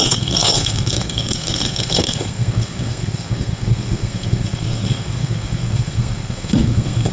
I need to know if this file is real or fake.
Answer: fake